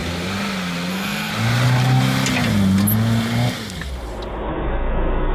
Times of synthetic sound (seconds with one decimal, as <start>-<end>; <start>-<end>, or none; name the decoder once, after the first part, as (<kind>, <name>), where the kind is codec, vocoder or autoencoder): 0.9-1.3 (codec, SNAC); 4.5-5.3